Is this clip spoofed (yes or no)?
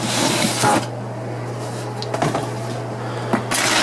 no